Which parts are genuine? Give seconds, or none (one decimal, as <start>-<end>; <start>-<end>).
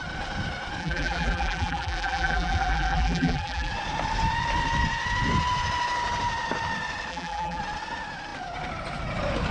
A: 0.0-0.8; 3.7-7.1; 7.6-9.5